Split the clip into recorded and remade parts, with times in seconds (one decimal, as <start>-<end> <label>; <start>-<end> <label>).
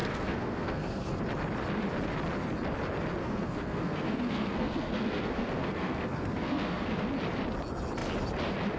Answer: 0.0-1.2 remade; 1.2-3.2 recorded; 3.2-7.1 remade; 7.1-8.8 recorded